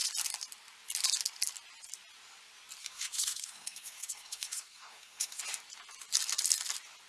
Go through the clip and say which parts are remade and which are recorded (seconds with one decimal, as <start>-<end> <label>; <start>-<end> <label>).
0.0-2.8 recorded; 2.8-5.4 remade; 5.4-7.1 recorded